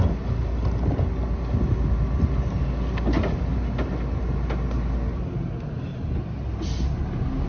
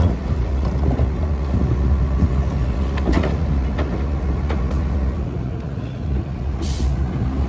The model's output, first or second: second